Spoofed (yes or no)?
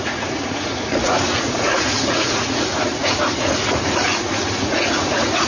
yes